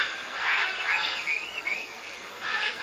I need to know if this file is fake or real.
fake